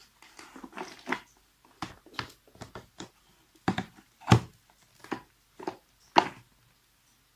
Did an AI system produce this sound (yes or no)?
no